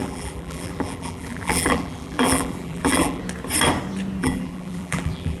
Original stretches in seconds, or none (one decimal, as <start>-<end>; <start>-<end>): 3.2-4.2